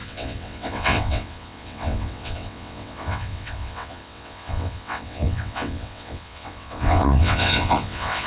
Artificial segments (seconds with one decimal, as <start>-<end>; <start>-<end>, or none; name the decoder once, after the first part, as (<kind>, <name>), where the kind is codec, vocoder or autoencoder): 0.0-8.3 (vocoder, WaveNeXt)